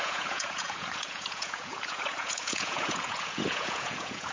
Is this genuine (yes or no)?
no